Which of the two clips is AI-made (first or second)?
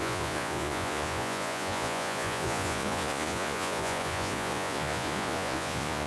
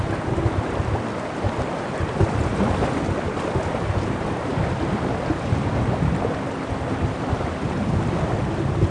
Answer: first